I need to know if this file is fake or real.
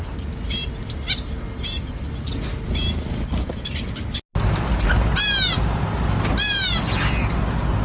real